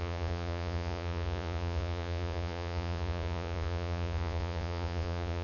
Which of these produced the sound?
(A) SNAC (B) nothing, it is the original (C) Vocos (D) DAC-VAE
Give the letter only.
C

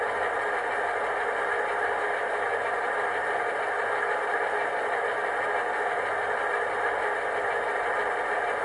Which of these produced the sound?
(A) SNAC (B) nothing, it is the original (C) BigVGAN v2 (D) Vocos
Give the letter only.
B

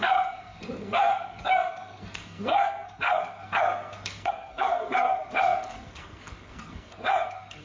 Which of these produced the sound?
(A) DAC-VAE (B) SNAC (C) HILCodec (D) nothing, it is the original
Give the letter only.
B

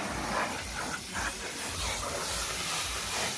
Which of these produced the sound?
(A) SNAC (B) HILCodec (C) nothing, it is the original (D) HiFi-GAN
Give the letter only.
C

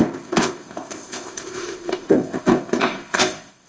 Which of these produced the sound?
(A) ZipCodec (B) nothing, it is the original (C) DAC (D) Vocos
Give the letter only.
A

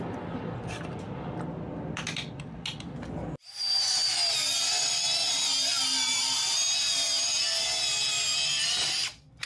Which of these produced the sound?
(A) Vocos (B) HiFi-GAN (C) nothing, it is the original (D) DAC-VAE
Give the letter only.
C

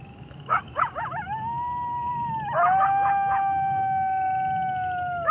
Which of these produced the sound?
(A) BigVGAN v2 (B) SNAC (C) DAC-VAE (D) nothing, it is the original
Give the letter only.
C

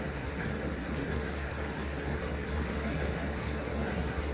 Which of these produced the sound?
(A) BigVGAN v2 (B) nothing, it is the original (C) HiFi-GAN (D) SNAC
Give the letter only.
D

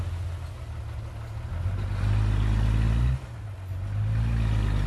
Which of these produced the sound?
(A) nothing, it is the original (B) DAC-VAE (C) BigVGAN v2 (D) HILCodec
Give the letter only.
A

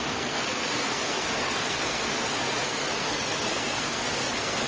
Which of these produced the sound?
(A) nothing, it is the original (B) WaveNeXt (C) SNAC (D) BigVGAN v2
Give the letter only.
C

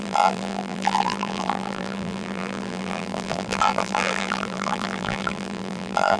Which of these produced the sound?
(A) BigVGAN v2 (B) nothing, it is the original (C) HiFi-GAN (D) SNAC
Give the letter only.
A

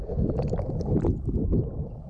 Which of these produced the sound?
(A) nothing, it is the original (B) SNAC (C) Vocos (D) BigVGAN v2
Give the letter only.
A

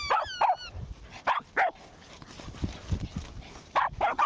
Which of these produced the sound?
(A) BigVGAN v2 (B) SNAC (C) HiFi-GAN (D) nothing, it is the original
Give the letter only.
D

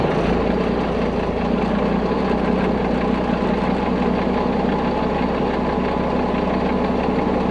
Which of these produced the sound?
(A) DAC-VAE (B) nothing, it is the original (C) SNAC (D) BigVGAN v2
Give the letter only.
B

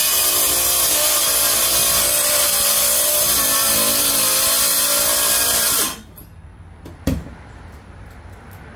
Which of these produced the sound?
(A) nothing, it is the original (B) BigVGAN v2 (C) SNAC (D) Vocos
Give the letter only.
B